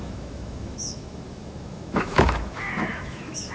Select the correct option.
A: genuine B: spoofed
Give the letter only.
B